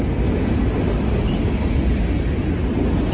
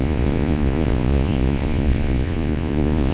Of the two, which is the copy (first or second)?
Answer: second